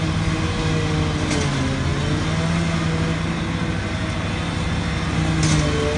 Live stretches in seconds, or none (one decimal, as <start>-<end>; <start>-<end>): 0.0-6.0